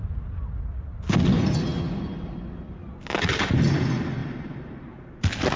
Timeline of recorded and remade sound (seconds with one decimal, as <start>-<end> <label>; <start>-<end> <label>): 0.0-4.2 recorded; 4.2-4.9 remade; 4.9-5.6 recorded